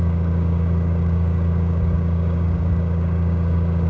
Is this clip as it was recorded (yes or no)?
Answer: no